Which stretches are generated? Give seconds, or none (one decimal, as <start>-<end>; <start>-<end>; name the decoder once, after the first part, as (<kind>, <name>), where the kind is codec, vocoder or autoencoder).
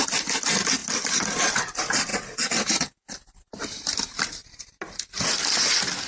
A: none